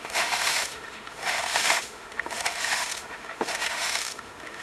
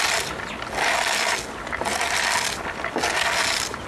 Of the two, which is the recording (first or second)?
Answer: second